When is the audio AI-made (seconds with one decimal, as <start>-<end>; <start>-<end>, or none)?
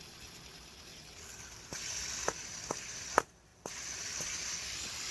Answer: 0.9-2.7; 3.5-5.1